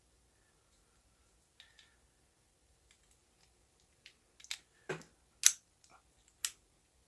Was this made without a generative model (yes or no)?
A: yes